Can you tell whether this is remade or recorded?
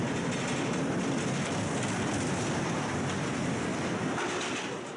recorded